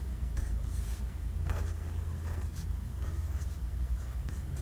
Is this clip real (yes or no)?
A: no